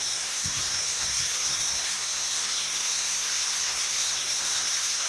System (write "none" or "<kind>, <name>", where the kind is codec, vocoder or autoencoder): codec, SNAC